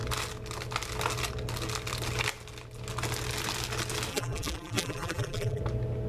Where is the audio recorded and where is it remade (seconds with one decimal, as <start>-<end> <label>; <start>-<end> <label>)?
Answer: 0.0-4.1 recorded; 4.1-5.6 remade; 5.6-6.1 recorded